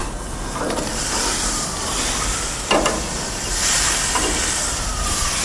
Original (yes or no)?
yes